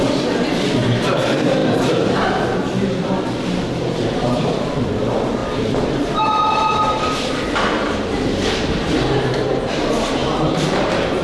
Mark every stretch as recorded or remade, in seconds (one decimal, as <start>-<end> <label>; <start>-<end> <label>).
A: 0.0-11.2 remade